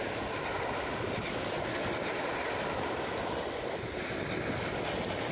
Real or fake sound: real